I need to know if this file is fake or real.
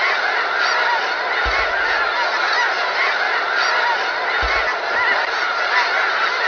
real